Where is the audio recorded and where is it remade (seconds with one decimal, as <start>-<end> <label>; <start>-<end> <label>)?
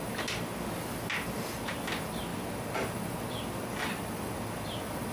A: 0.0-5.1 recorded